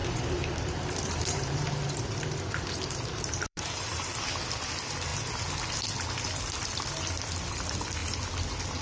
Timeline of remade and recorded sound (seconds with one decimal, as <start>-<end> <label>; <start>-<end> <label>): 0.0-4.2 remade; 4.2-8.8 recorded